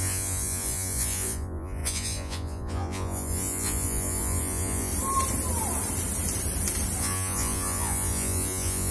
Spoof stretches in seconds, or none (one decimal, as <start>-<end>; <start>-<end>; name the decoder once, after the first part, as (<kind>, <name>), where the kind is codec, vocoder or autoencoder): 0.0-4.9 (vocoder, Vocos); 7.0-8.9